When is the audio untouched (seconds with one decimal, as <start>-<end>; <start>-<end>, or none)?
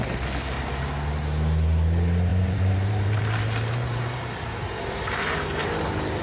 0.0-2.3; 4.4-6.2